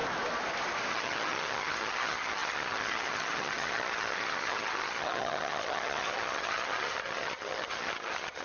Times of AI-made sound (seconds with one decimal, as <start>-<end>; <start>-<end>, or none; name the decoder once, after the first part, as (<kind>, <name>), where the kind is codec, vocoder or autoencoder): 0.9-8.4 (vocoder, HiFi-GAN)